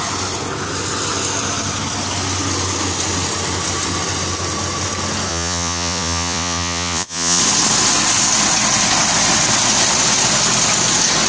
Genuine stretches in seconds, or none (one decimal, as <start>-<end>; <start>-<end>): 0.0-5.3; 7.4-11.3